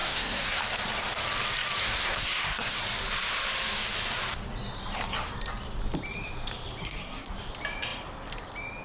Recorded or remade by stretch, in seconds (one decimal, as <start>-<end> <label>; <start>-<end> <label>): 0.0-0.6 remade; 0.6-1.8 recorded; 1.8-2.8 remade; 2.8-6.8 recorded; 6.8-7.3 remade; 7.3-8.8 recorded